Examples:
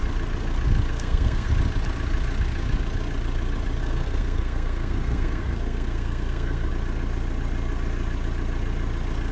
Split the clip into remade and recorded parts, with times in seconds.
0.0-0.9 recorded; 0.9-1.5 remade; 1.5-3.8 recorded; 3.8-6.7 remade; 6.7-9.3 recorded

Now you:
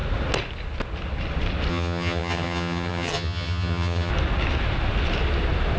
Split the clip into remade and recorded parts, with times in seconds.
0.0-1.7 recorded; 1.7-4.1 remade; 4.1-5.8 recorded

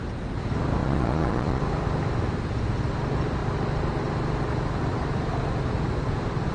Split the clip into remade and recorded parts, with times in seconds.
0.0-0.8 recorded; 0.8-1.6 remade; 1.6-6.5 recorded

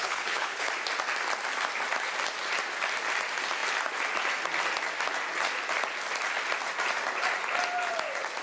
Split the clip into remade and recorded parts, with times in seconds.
0.0-0.7 remade; 0.7-8.4 recorded

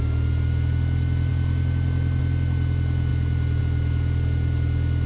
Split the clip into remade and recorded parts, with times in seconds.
0.0-5.1 recorded